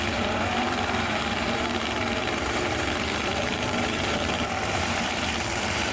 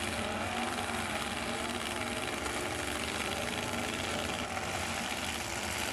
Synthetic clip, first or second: first